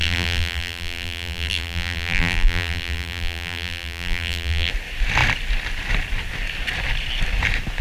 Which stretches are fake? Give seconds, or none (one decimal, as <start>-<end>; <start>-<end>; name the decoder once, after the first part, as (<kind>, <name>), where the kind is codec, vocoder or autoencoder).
0.0-4.7 (vocoder, BigVGAN v2)